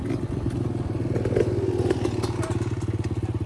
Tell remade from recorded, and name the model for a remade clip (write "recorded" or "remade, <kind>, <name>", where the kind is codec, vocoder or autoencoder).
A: recorded